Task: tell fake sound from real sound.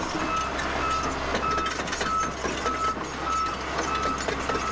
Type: real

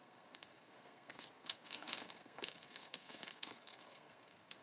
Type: fake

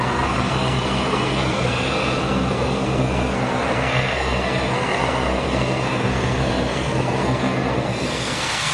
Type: fake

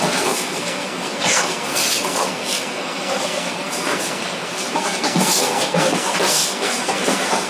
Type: fake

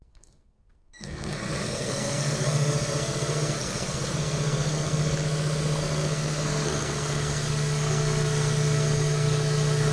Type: fake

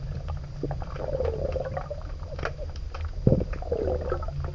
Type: real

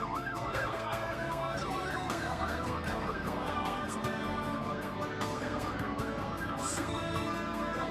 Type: fake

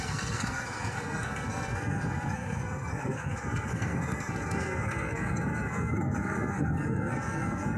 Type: fake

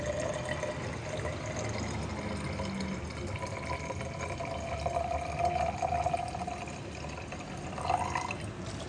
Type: real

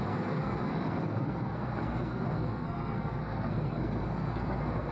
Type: fake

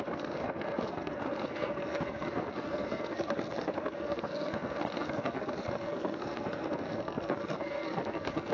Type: fake